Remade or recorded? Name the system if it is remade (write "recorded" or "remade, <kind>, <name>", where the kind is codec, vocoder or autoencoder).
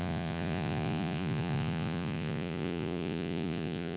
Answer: remade, vocoder, Vocos